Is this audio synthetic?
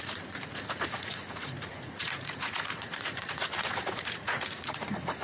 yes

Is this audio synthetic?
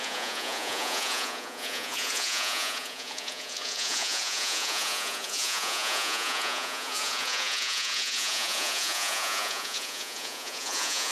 yes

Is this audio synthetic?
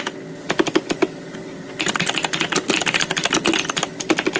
no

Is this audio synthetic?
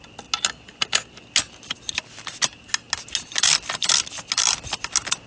no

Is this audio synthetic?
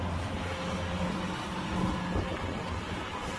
no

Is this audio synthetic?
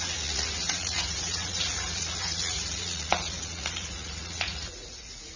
yes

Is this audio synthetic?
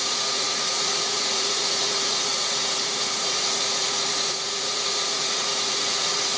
yes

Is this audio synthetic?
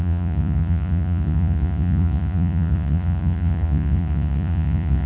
yes